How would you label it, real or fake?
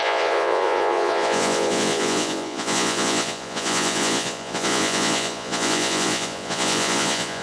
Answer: fake